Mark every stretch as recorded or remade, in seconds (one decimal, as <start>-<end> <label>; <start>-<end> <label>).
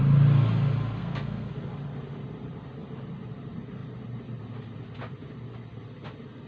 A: 0.0-1.0 recorded; 1.0-1.5 remade; 1.5-6.5 recorded